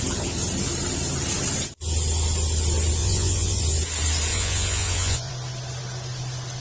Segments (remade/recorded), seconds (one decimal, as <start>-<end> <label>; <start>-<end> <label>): 0.0-3.0 recorded; 3.0-3.6 remade; 3.6-4.3 recorded; 4.3-5.3 remade; 5.3-6.6 recorded